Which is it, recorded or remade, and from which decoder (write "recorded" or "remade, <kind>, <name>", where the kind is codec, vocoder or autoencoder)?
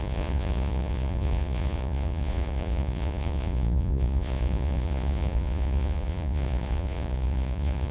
remade, vocoder, Vocos